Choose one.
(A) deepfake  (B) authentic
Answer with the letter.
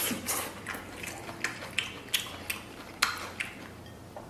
B